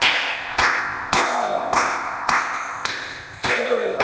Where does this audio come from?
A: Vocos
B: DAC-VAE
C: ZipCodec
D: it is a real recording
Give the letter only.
C